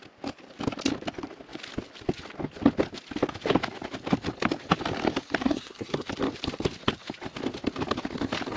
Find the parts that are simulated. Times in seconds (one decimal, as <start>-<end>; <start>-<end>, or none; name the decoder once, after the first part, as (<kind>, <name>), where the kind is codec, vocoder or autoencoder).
5.4-6.1 (codec, SNAC)